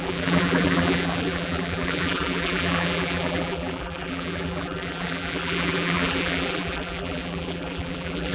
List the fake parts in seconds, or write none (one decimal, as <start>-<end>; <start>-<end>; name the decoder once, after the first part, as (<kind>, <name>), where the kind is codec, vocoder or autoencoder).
0.0-8.3 (vocoder, BigVGAN v2)